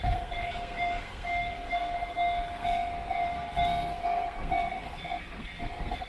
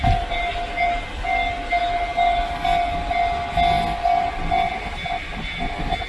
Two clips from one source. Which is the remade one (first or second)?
first